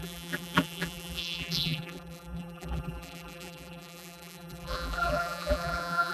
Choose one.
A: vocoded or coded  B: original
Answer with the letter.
A